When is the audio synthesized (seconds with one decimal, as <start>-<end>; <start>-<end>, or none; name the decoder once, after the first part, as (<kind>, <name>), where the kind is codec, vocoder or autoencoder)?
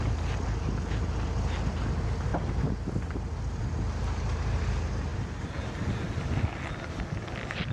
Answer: none